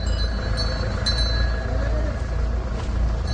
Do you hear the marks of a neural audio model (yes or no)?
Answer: no